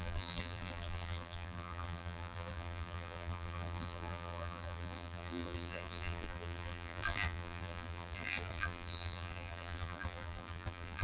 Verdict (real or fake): fake